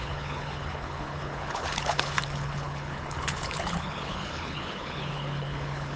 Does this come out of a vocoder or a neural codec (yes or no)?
yes